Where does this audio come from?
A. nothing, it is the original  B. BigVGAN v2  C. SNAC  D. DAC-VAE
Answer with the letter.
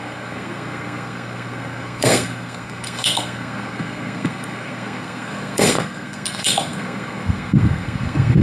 C